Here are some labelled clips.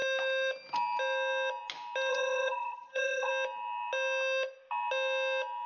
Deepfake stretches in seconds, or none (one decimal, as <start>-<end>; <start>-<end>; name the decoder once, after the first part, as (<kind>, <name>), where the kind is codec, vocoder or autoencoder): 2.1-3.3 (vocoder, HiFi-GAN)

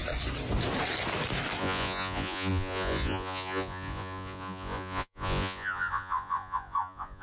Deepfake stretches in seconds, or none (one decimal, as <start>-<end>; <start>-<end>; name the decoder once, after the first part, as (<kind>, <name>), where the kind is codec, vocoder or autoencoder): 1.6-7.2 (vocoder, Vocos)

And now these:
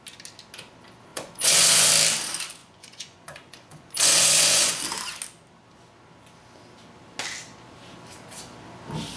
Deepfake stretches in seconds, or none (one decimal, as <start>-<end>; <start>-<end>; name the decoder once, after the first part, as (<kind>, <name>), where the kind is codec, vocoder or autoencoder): 1.1-1.9 (vocoder, Vocos); 2.6-4.8